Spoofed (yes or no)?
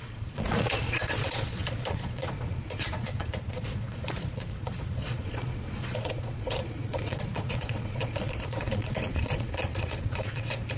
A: yes